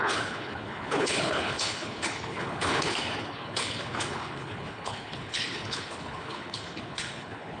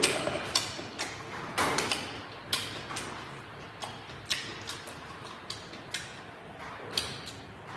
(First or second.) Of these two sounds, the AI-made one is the first